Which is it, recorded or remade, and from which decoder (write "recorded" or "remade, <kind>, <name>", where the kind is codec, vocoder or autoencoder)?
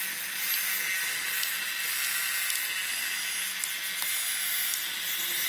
recorded